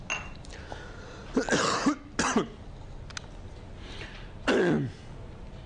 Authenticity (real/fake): real